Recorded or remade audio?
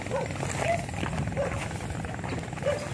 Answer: recorded